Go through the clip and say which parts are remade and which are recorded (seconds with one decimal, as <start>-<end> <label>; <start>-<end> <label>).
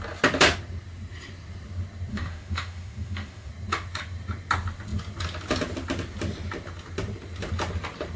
0.0-2.1 recorded; 2.1-3.5 remade; 3.5-8.2 recorded